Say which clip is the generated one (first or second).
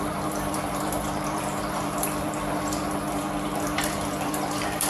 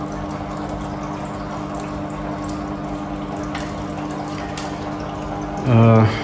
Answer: first